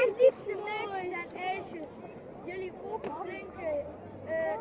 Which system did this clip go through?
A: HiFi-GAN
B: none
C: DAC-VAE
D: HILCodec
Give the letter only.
B